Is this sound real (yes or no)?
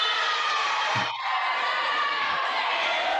no